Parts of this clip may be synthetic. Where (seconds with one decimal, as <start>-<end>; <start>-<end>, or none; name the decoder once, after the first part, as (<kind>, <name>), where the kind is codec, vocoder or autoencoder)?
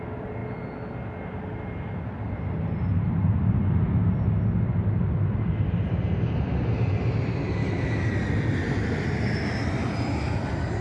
7.6-8.1 (autoencoder, DAC-VAE)